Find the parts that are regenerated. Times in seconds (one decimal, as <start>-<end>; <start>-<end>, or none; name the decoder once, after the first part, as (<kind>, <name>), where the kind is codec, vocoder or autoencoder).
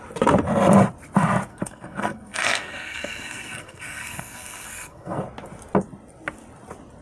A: 1.5-5.2 (codec, SNAC)